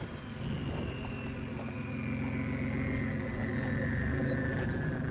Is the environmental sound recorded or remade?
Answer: recorded